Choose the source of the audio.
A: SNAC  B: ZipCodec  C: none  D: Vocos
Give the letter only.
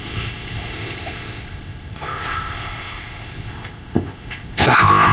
B